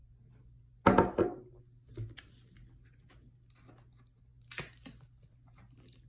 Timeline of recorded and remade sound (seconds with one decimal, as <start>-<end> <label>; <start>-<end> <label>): 0.0-6.1 recorded